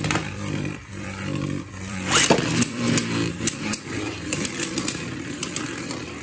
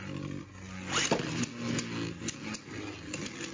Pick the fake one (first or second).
first